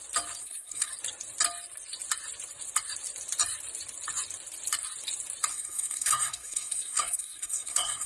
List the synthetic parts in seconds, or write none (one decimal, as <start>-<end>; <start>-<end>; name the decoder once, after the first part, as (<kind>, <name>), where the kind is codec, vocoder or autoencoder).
0.4-0.9 (codec, SNAC); 5.5-8.1